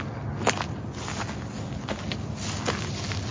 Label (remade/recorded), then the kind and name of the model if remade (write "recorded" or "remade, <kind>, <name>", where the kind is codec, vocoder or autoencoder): recorded